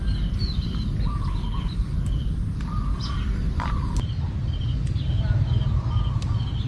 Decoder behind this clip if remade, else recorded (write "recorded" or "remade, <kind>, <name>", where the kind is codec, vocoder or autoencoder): recorded